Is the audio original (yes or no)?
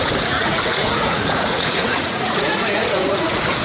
no